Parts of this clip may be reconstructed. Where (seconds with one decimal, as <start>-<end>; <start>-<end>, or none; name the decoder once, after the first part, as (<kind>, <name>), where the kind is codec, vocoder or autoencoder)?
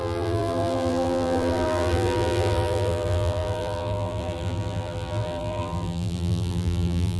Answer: 0.0-7.2 (vocoder, BigVGAN v2)